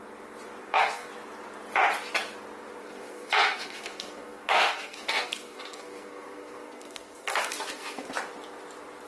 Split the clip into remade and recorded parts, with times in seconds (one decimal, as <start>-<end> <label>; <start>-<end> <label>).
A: 0.0-0.6 recorded; 0.6-1.1 remade; 1.1-2.8 recorded; 2.8-8.1 remade; 8.1-9.1 recorded